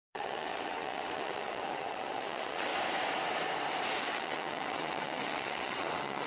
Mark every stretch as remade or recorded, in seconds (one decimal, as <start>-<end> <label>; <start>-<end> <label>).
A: 0.0-2.7 remade; 2.7-4.0 recorded; 4.0-6.3 remade